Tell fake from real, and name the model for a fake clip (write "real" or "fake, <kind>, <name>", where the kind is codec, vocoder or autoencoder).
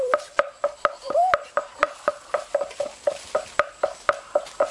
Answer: real